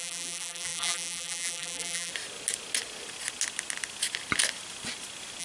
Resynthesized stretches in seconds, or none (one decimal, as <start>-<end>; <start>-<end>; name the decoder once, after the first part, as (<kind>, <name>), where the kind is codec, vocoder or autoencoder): 0.0-2.1 (vocoder, BigVGAN v2)